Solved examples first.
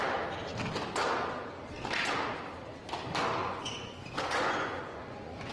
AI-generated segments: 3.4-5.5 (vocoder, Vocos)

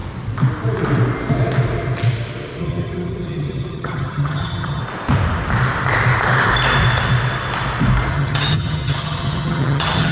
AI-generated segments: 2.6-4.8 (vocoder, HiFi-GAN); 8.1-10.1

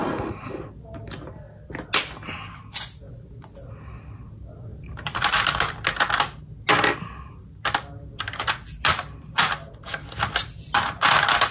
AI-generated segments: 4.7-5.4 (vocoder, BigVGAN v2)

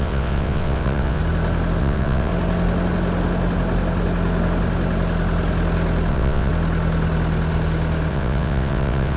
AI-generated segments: 0.0-1.2 (vocoder, WaveNeXt); 1.8-2.3; 6.1-6.5; 8.1-9.2

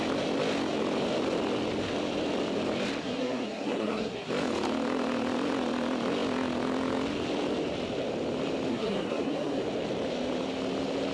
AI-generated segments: 3.0-4.3 (codec, SNAC); 8.7-9.6

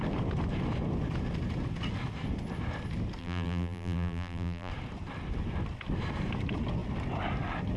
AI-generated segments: 3.2-4.7 (vocoder, BigVGAN v2)

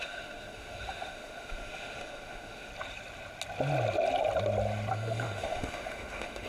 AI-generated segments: 0.0-2.7 (autoencoder, DAC-VAE); 4.9-6.5

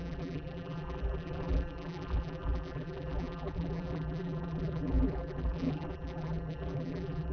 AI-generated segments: 0.0-7.3 (vocoder, BigVGAN v2)